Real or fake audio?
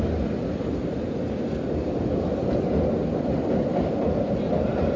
real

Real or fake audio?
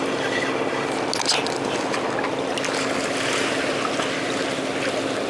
real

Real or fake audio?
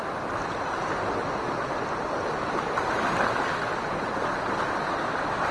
real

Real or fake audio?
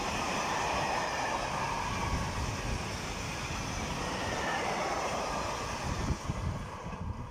real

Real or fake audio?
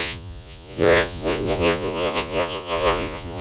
fake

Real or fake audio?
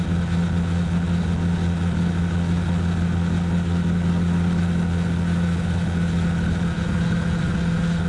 real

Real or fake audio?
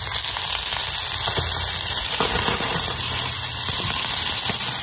real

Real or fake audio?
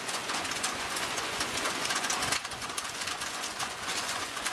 fake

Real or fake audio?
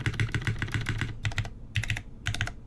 real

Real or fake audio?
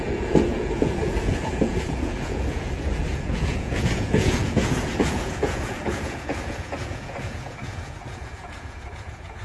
fake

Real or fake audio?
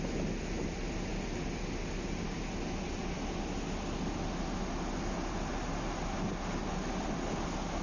real